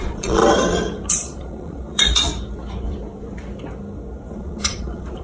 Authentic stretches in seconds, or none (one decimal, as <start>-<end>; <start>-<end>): 0.4-1.1; 2.3-4.3